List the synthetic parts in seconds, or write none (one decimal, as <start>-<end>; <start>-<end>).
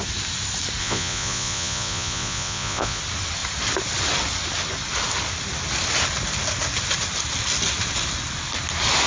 0.8-3.0